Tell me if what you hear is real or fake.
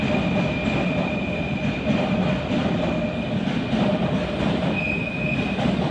real